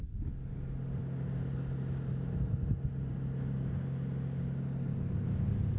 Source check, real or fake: real